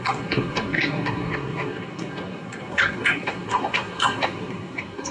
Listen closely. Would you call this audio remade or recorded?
remade